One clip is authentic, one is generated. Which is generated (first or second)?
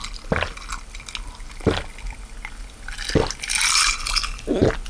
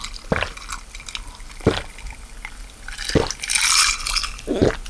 second